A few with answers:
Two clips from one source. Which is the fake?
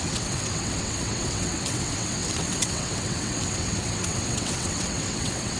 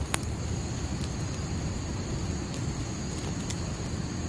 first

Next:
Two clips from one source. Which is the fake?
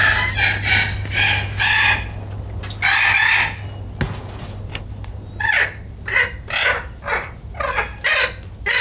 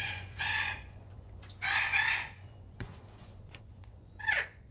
second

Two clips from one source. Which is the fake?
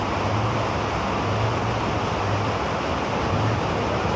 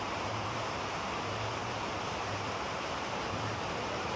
second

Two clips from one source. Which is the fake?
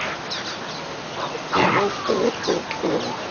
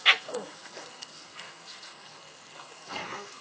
second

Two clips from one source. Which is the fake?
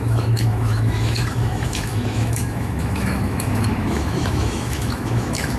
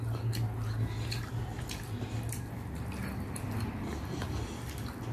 first